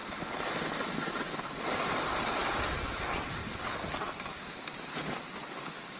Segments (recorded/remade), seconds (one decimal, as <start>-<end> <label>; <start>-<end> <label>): 0.0-2.4 recorded; 2.4-5.4 remade; 5.4-6.0 recorded